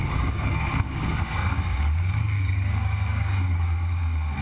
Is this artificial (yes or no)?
yes